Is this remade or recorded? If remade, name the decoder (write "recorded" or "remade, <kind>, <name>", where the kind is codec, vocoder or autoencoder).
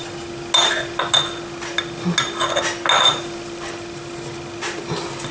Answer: recorded